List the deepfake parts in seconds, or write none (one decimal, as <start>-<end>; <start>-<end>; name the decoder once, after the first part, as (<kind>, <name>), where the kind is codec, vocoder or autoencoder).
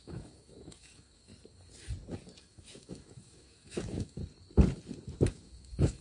0.0-1.3 (autoencoder, DAC-VAE); 2.4-4.2; 5.3-6.0